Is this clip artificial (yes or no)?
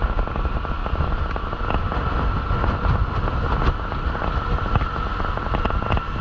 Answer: no